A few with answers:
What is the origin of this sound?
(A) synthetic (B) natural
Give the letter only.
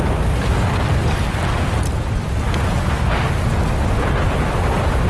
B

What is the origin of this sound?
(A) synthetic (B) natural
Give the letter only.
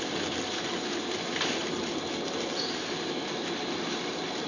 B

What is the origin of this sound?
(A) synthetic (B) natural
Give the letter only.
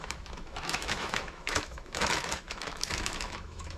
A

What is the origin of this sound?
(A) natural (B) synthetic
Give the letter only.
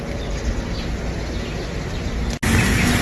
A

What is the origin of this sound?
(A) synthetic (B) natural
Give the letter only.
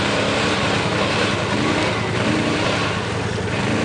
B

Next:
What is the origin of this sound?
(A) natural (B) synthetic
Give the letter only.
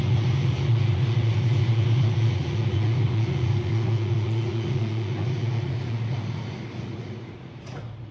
B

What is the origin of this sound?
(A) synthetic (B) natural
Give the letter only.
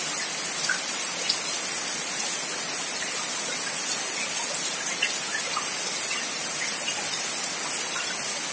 B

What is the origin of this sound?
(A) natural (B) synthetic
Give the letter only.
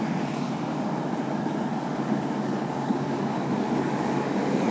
B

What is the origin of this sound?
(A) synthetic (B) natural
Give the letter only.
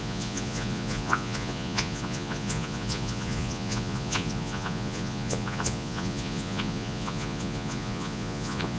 A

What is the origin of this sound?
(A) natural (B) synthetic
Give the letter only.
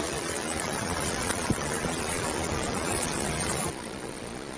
B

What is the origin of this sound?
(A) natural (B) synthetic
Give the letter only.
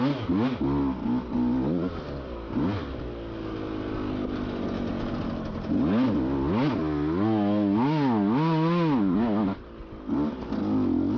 A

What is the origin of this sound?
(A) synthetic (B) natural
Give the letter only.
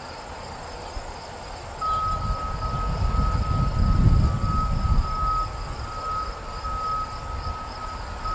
B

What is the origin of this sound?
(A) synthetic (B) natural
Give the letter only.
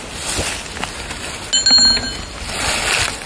B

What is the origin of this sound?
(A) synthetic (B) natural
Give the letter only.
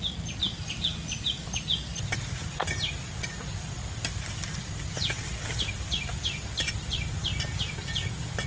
B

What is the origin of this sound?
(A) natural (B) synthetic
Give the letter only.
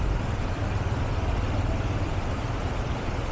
A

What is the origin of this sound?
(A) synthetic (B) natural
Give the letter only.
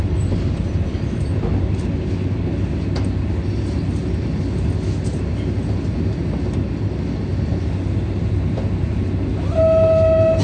B